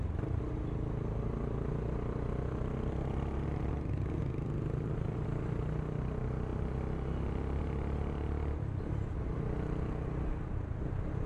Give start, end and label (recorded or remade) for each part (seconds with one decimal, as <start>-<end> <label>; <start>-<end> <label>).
0.0-11.3 recorded